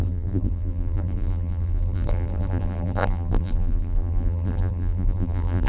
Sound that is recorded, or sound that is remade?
remade